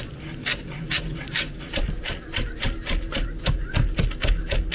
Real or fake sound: real